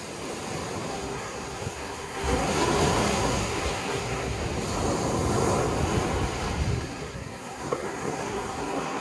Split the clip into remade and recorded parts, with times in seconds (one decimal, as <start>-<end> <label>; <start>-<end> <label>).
0.0-0.9 recorded; 0.9-4.4 remade; 4.4-6.7 recorded; 6.7-9.0 remade

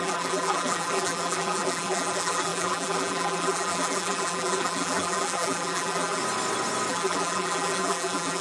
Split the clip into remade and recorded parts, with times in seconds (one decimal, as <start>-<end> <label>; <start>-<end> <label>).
0.0-6.2 remade; 6.2-6.9 recorded; 6.9-8.4 remade

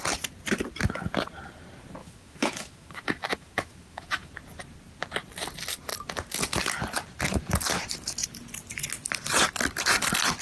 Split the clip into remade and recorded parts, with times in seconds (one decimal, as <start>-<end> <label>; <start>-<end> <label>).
0.0-2.0 recorded; 2.0-4.3 remade; 4.3-10.4 recorded

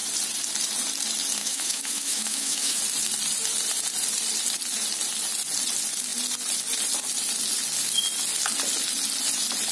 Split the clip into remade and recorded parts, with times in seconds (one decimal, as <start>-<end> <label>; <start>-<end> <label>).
0.0-1.4 recorded; 1.4-2.8 remade; 2.8-9.7 recorded